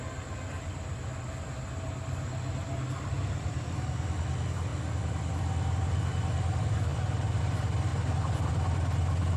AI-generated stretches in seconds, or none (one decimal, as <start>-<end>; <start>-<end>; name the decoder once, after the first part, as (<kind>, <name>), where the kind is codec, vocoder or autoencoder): 6.9-7.4 (vocoder, BigVGAN v2)